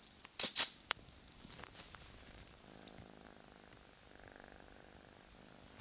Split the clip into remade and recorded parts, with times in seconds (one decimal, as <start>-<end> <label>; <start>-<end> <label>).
0.0-0.5 recorded; 0.5-2.6 remade; 2.6-5.8 recorded